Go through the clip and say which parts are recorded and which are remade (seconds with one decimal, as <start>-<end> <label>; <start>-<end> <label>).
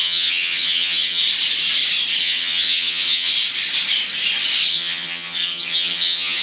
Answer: 0.0-1.2 remade; 1.2-2.2 recorded; 2.2-3.3 remade; 3.3-4.7 recorded; 4.7-6.4 remade